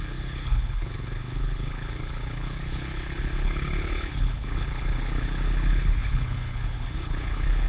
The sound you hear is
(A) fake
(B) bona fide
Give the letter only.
A